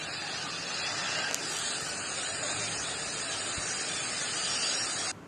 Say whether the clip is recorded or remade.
recorded